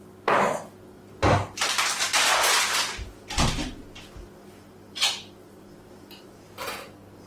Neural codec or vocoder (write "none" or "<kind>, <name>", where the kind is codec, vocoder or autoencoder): none